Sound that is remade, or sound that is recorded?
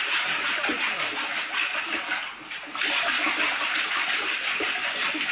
recorded